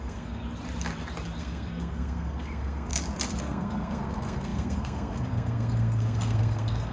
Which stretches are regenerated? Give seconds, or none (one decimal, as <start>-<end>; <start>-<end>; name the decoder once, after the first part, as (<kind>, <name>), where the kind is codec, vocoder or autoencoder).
0.0-0.4 (codec, SNAC); 1.4-2.9; 3.4-6.9